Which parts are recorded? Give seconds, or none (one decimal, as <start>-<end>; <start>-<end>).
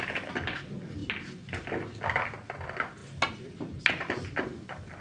0.0-5.0